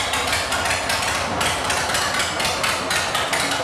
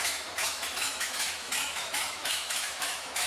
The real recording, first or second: first